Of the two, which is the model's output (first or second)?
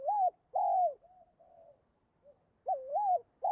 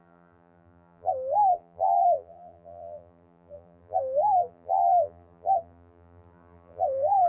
second